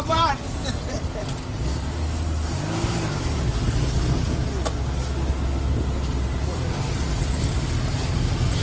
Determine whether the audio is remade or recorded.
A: recorded